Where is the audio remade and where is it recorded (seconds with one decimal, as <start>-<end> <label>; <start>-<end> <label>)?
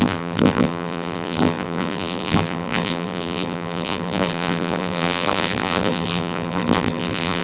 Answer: 0.0-7.4 remade